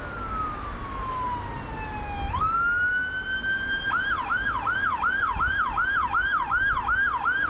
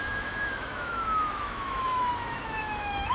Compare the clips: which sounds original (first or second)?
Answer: first